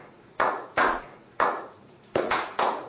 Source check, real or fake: fake